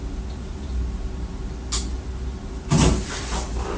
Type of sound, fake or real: real